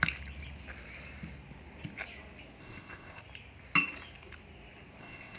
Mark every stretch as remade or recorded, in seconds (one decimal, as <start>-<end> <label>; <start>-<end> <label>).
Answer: 0.0-2.6 recorded; 2.6-3.2 remade; 3.2-5.0 recorded; 5.0-5.4 remade